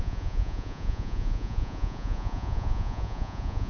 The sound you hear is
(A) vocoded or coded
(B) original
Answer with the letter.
A